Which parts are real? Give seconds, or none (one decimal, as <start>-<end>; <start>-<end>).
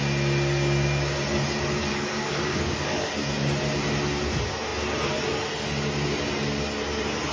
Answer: 0.0-1.9; 3.1-7.3